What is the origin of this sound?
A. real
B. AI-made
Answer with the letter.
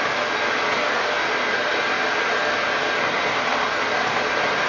A